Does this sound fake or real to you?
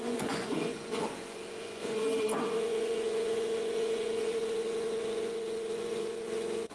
fake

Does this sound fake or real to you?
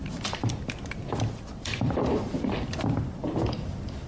fake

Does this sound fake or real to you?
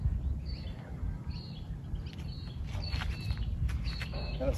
real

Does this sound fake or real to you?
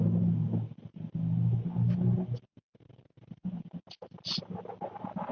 real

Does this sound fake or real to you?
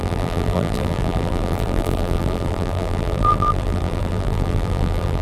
fake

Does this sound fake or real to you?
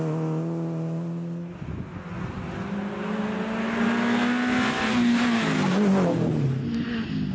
real